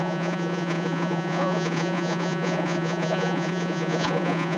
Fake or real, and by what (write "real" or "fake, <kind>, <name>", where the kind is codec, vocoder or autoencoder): fake, vocoder, Vocos